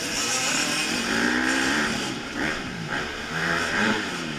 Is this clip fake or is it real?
fake